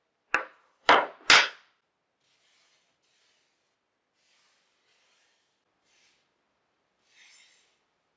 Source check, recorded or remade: recorded